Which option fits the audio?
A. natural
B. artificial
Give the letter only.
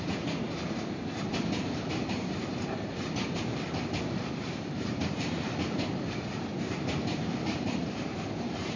B